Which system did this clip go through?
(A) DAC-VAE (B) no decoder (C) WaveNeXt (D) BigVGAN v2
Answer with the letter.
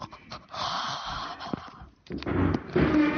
B